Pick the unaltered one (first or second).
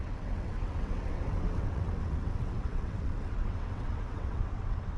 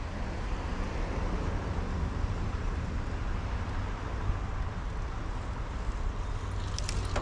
second